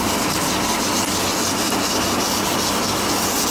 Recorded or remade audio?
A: recorded